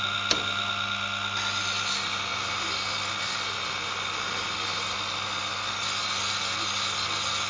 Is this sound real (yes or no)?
yes